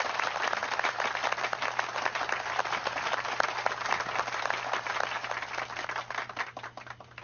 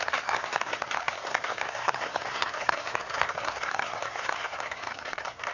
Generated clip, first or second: second